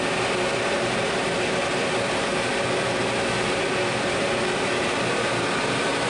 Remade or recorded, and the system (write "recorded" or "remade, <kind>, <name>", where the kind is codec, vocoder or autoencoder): recorded